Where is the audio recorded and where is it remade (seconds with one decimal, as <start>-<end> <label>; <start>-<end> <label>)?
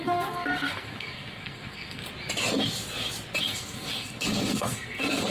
0.0-2.0 remade; 2.0-3.4 recorded; 3.4-5.3 remade